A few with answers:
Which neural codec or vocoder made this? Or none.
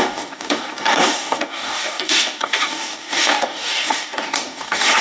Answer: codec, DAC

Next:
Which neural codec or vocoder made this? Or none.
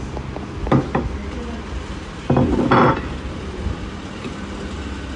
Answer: none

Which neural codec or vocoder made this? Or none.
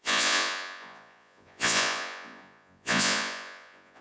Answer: vocoder, Vocos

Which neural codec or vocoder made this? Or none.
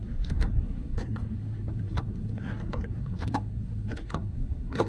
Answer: codec, SNAC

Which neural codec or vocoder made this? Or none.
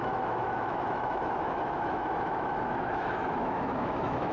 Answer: autoencoder, DAC-VAE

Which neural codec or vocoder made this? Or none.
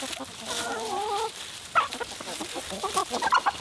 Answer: none